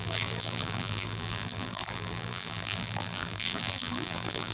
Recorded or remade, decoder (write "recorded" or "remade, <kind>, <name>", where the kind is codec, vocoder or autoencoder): remade, vocoder, BigVGAN v2